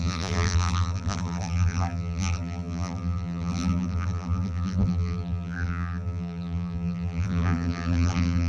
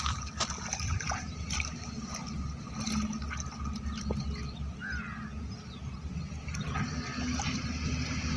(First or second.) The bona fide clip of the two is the second